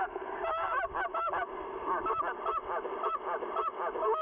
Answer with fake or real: real